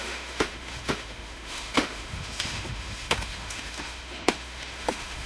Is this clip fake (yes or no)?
yes